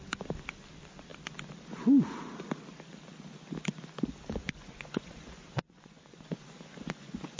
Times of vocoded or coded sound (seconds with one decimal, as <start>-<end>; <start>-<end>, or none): 4.4-7.4